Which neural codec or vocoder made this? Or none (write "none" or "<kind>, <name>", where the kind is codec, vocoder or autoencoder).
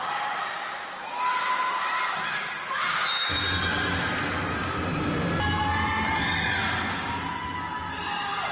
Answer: none